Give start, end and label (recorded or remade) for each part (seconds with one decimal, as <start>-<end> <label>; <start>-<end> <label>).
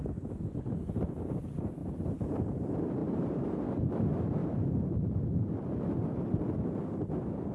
0.0-1.8 recorded; 1.8-2.5 remade; 2.5-3.0 recorded; 3.0-3.6 remade; 3.6-4.4 recorded; 4.4-4.9 remade; 4.9-7.5 recorded